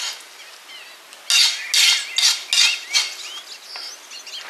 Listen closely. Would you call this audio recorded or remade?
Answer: recorded